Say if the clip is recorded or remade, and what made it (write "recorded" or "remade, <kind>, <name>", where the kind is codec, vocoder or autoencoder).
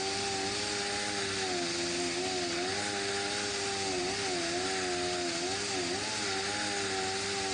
recorded